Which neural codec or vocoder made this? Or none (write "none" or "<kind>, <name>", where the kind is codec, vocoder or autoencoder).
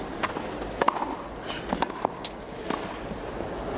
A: none